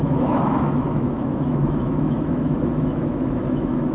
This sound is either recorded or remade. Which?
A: remade